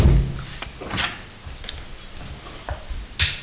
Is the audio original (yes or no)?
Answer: yes